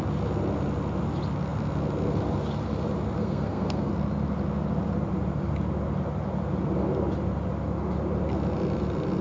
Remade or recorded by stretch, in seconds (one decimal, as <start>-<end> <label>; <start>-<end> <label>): 0.0-3.2 recorded; 3.2-3.9 remade; 3.9-9.2 recorded